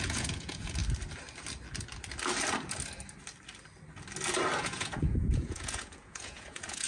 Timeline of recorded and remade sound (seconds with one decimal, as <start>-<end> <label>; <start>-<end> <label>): 0.0-0.8 remade; 0.8-4.6 recorded; 4.6-6.9 remade